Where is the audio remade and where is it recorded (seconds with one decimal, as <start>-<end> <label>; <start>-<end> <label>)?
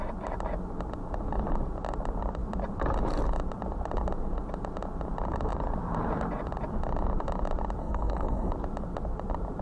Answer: 0.0-7.8 recorded; 7.8-8.5 remade; 8.5-9.6 recorded